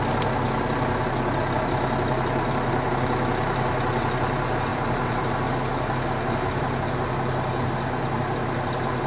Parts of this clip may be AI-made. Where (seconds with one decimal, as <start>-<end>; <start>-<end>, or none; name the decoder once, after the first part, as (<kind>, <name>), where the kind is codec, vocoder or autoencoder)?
4.7-5.3 (vocoder, BigVGAN v2)